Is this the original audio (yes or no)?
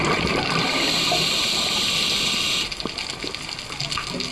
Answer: yes